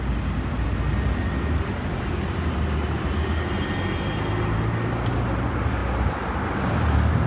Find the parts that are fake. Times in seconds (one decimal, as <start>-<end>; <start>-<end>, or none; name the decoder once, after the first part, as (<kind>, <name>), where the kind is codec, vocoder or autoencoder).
none